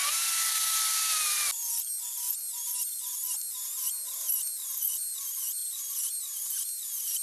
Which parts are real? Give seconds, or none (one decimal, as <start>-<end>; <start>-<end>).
0.0-7.2